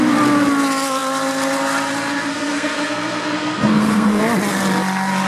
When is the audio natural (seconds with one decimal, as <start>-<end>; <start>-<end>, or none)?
0.0-2.3; 4.2-5.3